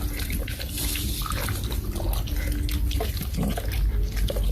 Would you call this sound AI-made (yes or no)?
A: no